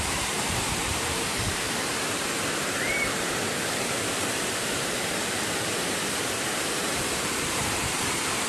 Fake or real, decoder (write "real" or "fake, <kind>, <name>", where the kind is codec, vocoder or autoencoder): fake, vocoder, BigVGAN v2